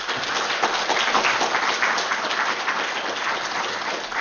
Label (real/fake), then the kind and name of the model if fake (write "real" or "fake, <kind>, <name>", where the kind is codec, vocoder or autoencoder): real